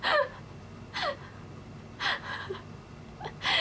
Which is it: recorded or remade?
recorded